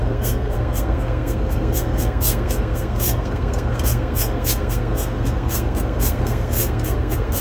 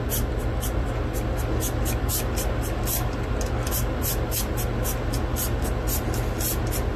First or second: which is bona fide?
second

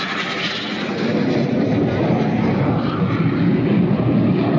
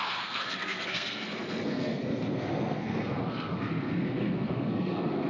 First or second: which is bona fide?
first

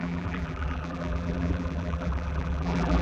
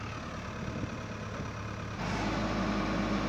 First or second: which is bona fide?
second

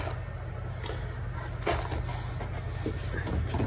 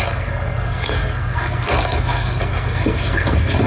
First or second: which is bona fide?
first